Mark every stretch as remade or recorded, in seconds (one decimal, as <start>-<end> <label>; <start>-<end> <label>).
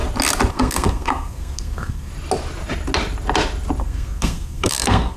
0.0-0.5 recorded; 0.5-2.1 remade; 2.1-3.8 recorded; 3.8-5.2 remade